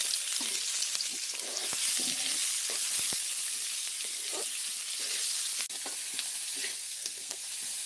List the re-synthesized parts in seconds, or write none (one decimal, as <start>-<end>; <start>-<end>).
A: 6.7-7.4